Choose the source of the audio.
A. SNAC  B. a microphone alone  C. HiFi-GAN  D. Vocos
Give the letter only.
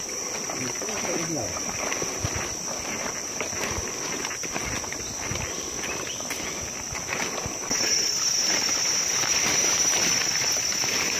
B